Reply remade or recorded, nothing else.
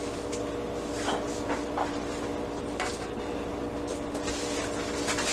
recorded